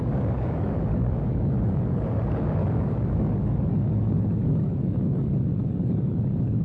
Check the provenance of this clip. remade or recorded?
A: remade